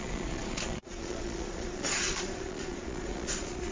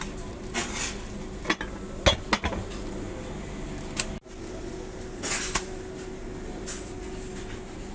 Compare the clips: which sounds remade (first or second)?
first